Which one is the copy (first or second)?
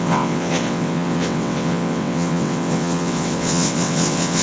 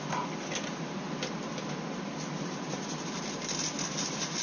first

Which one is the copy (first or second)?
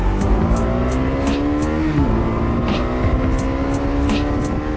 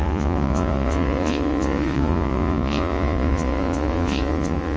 second